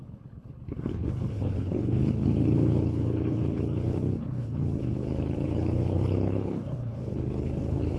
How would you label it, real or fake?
fake